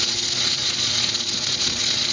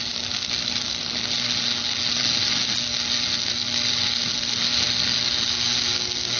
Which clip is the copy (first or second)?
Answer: first